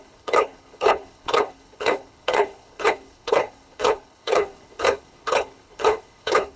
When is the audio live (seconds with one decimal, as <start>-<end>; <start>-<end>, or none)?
none